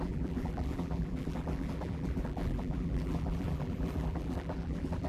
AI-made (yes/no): yes